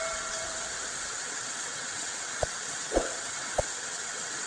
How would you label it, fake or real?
fake